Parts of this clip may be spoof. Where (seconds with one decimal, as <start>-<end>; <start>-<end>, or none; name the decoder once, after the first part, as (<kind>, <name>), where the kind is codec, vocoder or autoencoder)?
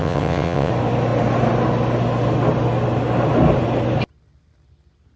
0.0-0.7 (vocoder, WaveNeXt)